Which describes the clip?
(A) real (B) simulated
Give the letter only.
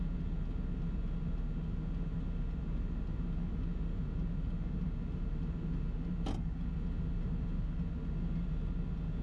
A